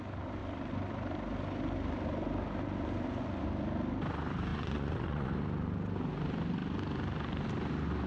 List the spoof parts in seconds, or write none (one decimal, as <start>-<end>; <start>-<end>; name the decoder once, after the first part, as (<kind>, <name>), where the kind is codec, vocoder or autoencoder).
4.5-5.3 (vocoder, Vocos)